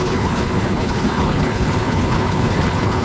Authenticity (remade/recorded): remade